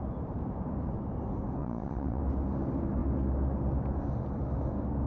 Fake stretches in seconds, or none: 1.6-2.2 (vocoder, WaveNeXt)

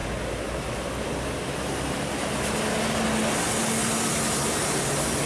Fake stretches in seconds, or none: none

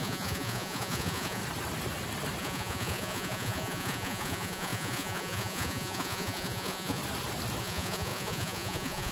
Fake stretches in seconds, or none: 0.0-1.4 (vocoder, Vocos); 2.4-7.0; 7.6-9.1